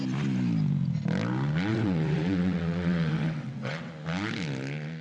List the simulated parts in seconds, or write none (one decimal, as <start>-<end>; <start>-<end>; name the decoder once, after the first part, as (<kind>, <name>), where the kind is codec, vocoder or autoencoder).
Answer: 1.7-3.9 (vocoder, WaveNeXt)